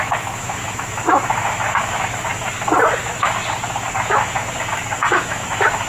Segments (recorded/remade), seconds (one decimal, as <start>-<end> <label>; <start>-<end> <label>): 0.0-2.3 remade; 2.3-3.0 recorded; 3.0-3.4 remade; 3.4-4.2 recorded; 4.2-5.9 remade